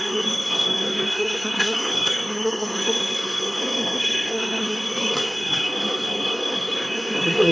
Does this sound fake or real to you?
fake